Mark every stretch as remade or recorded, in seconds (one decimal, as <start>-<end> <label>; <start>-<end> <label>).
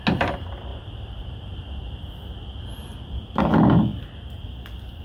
0.0-5.0 recorded